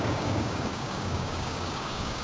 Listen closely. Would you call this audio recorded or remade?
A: remade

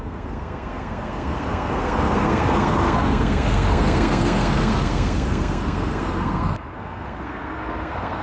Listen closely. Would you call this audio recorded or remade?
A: remade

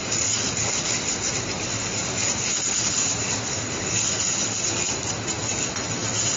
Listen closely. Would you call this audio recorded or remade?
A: recorded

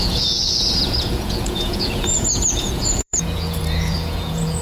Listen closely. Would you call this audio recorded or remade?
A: remade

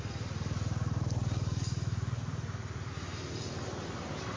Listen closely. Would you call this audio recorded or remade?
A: recorded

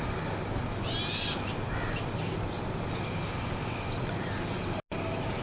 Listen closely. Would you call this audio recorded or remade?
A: recorded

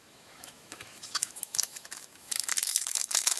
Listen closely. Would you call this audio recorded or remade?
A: remade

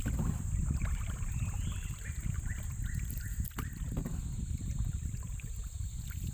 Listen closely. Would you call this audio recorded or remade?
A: recorded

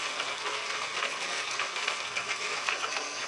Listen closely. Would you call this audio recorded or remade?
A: remade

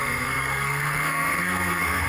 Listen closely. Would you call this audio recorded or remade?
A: remade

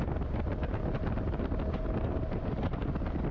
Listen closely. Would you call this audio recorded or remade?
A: recorded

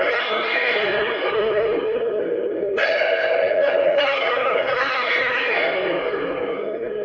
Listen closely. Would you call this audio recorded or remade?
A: remade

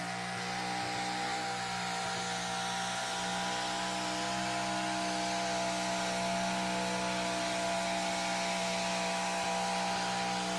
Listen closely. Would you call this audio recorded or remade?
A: recorded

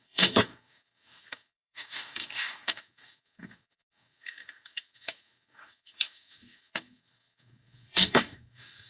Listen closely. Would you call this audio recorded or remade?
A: remade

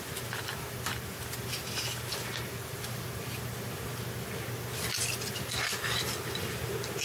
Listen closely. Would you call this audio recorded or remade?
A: recorded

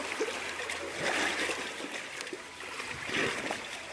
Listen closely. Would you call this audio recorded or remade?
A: recorded